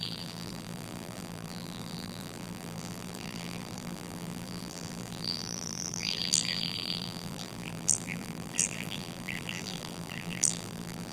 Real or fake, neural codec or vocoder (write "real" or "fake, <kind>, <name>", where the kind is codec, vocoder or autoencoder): fake, vocoder, BigVGAN v2